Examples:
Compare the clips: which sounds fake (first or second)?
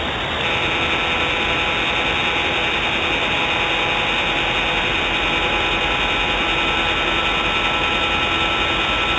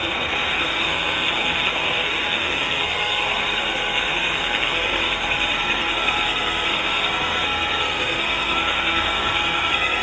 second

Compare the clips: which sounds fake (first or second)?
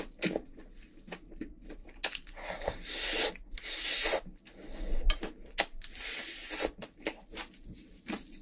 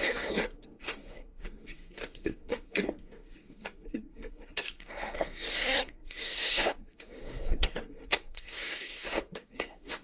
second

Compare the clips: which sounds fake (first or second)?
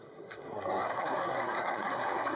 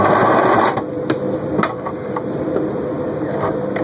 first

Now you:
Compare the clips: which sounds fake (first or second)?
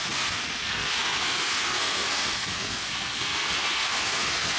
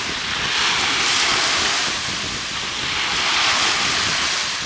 first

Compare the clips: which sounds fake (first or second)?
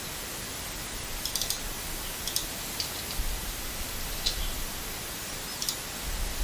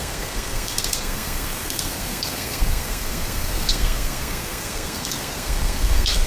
second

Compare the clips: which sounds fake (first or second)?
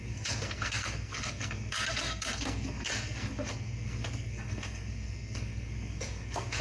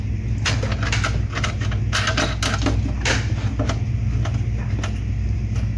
first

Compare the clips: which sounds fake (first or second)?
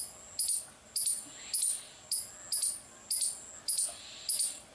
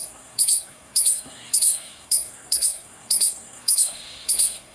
second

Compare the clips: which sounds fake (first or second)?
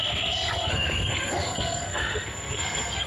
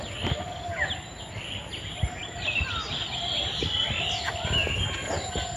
first